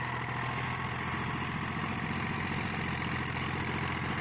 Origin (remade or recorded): recorded